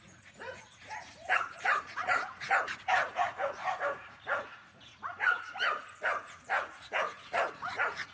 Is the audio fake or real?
fake